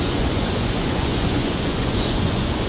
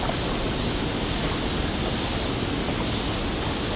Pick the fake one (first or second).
first